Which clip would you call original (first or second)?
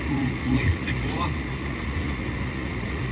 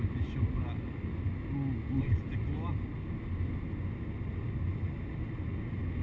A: second